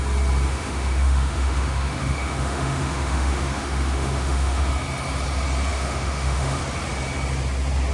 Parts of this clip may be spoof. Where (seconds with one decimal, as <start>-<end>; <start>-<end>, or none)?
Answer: 0.5-4.7; 5.7-6.6